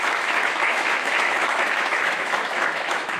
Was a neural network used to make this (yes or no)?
yes